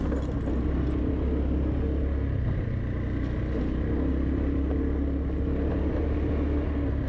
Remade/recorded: recorded